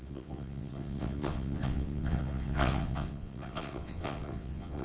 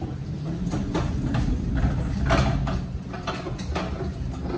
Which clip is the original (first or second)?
second